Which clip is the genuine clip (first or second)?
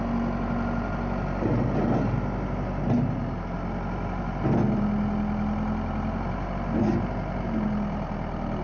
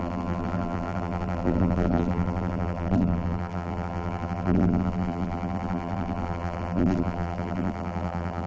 first